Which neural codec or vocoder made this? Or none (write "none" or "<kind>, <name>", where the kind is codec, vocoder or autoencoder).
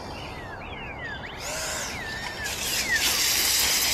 none